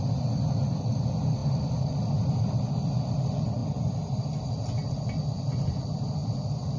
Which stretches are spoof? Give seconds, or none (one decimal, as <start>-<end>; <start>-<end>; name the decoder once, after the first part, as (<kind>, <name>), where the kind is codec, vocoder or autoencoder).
0.0-6.2 (vocoder, BigVGAN v2)